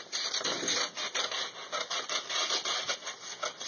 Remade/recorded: recorded